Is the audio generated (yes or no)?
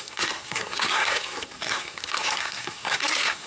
yes